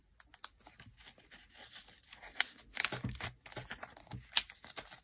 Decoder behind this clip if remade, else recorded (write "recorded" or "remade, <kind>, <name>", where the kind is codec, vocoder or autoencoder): recorded